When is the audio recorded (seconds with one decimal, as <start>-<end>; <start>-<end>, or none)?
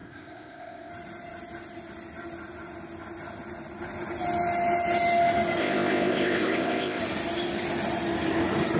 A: 0.9-5.6; 7.0-8.8